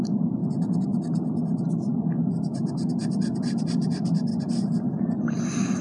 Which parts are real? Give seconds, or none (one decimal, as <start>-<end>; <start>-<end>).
0.0-5.8